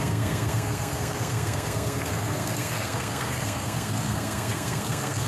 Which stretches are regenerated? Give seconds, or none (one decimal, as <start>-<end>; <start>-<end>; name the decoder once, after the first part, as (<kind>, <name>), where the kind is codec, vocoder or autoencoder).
0.0-5.3 (codec, SNAC)